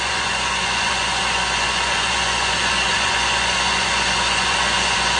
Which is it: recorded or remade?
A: remade